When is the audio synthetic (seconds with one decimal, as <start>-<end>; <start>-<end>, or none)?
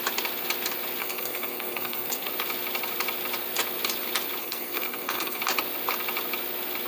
1.0-2.3; 4.4-5.4